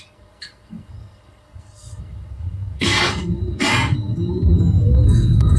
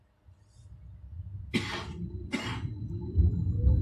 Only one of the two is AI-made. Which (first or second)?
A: first